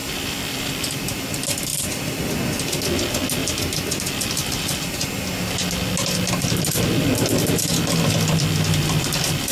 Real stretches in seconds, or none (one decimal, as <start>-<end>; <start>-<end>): 1.0-1.7; 2.8-9.5

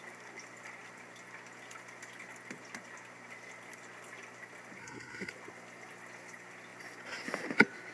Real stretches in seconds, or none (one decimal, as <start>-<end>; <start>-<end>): 0.0-4.8; 5.3-7.9

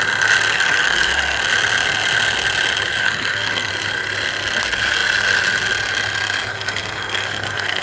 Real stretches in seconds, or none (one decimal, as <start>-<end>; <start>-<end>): 0.0-0.5; 1.4-3.0; 3.7-6.5

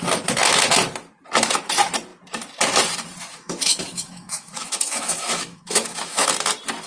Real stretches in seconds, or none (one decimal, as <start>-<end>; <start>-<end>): 0.0-3.3; 6.3-6.9

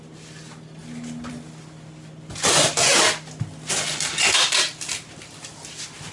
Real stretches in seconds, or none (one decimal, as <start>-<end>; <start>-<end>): 0.0-6.1

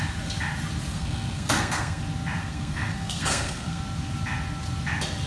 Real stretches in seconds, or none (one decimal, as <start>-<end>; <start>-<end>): 0.0-0.9; 2.0-2.4; 3.8-5.3

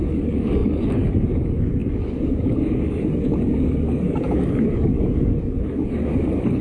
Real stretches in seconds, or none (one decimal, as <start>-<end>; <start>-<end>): none